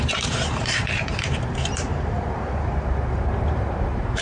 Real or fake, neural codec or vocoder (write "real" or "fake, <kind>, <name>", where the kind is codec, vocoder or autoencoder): fake, vocoder, BigVGAN v2